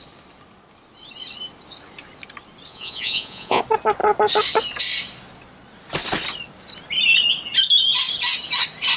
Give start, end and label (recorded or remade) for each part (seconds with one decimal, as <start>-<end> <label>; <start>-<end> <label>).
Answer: 0.0-2.7 recorded; 2.7-3.6 remade; 3.6-9.0 recorded